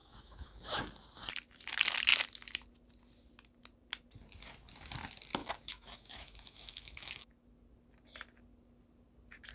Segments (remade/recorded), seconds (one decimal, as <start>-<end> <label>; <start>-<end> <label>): 0.0-0.8 remade; 0.8-5.4 recorded; 5.4-7.3 remade; 7.3-9.5 recorded